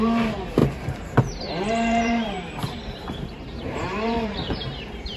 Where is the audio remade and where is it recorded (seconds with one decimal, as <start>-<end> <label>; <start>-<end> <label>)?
0.0-5.2 remade

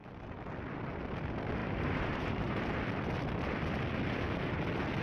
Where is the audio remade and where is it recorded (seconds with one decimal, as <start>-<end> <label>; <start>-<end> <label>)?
0.0-1.6 recorded; 1.6-2.8 remade; 2.8-5.0 recorded

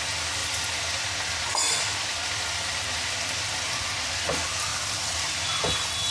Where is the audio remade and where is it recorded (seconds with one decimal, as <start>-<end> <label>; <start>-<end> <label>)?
0.0-6.1 recorded

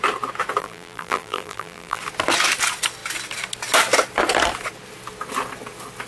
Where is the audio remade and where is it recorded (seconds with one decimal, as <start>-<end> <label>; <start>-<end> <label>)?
0.0-0.6 recorded; 0.6-2.0 remade; 2.0-6.1 recorded

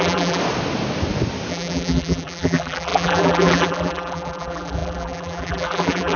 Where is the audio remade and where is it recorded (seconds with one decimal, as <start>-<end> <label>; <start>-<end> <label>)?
0.0-0.4 remade; 0.4-1.5 recorded; 1.5-6.2 remade

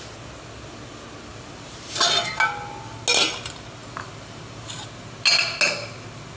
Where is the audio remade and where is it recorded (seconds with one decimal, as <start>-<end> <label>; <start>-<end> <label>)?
0.0-1.3 recorded; 1.3-1.9 remade; 1.9-3.8 recorded; 3.8-4.8 remade; 4.8-6.4 recorded

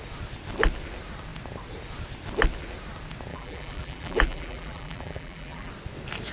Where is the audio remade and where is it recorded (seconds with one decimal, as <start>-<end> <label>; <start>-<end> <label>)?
0.0-3.3 recorded; 3.3-5.7 remade; 5.7-6.3 recorded